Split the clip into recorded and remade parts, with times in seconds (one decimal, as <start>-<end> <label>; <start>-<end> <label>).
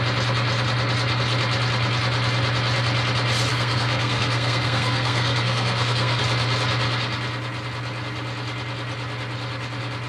0.0-3.5 recorded; 3.5-6.2 remade; 6.2-10.1 recorded